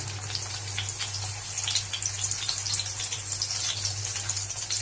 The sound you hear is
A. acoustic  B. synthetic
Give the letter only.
A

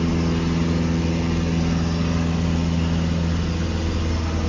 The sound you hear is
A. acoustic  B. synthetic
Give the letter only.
A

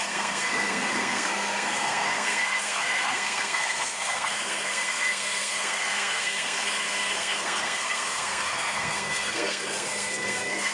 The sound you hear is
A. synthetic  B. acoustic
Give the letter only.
A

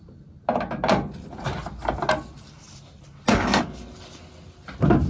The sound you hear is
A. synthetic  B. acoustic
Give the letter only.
B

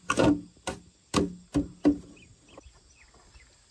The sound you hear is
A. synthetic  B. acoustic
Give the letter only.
B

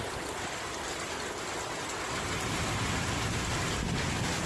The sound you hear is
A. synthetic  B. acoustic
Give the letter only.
B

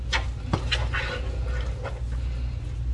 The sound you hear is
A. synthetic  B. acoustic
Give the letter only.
B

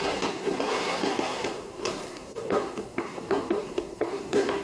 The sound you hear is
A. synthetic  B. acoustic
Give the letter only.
A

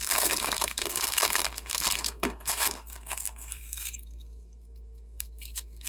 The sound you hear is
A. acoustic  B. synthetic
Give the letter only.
B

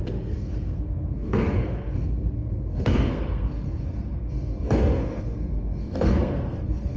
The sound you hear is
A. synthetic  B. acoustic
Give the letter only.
A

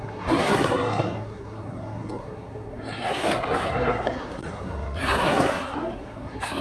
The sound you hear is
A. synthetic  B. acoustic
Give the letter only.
A